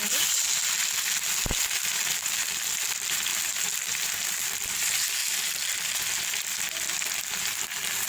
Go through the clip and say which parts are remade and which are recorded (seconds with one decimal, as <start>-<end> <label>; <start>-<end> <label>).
0.0-8.1 recorded